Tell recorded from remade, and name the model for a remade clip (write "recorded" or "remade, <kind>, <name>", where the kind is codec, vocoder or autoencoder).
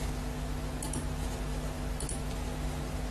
recorded